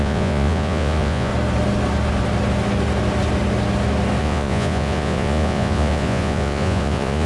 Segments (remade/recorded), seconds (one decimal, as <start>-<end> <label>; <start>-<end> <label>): 0.0-1.3 remade; 1.3-4.2 recorded; 4.2-7.3 remade